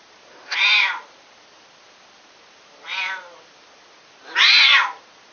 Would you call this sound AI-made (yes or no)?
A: no